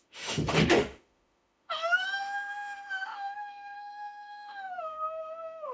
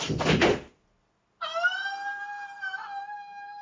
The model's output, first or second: first